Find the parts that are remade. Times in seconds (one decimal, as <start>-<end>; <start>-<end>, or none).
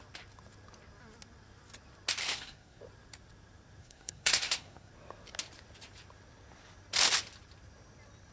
2.2-2.8; 3.8-4.9